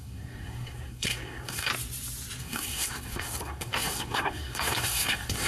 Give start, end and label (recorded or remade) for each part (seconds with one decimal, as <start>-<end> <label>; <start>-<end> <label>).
0.0-1.7 remade; 1.7-2.4 recorded; 2.4-5.5 remade